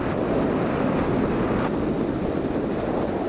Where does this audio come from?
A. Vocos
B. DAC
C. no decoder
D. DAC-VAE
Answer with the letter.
C